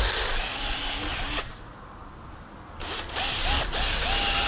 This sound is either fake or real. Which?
real